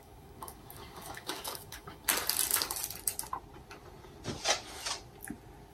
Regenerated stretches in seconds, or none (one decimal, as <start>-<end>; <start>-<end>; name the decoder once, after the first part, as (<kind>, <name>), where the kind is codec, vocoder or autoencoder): 0.0-2.1 (codec, DAC)